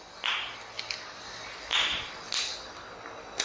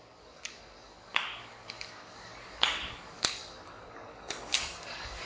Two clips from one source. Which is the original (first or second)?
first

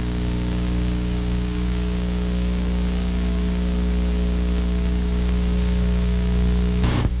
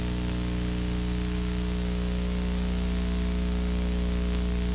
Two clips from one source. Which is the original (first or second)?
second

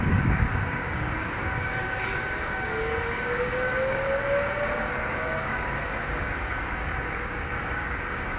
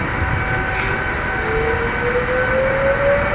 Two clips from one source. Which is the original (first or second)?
second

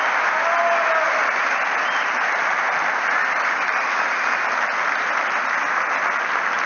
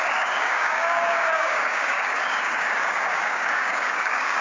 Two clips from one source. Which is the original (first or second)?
first